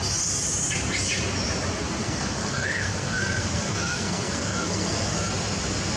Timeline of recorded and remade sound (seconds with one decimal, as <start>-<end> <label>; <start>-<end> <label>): 0.0-2.0 recorded; 2.0-5.3 remade; 5.3-6.0 recorded